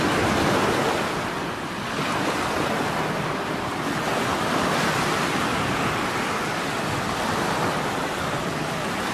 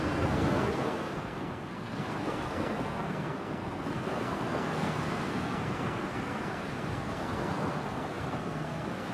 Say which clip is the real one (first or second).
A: first